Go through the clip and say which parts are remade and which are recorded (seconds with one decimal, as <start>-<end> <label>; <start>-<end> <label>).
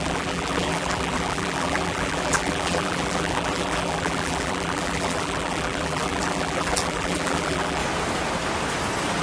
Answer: 0.0-7.8 remade; 7.8-9.2 recorded